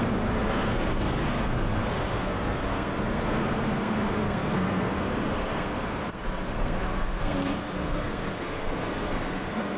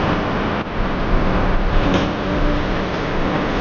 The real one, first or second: second